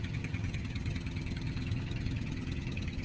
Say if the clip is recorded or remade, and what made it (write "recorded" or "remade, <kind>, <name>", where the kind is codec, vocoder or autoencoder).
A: remade, vocoder, HiFi-GAN